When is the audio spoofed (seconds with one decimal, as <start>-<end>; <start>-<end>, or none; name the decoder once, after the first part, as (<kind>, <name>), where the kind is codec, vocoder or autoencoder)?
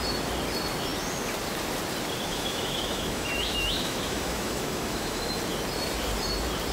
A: 2.3-5.4 (autoencoder, DAC-VAE)